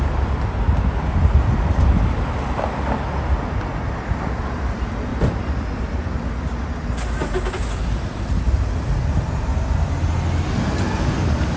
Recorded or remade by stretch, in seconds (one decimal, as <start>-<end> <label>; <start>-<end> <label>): 0.0-11.6 recorded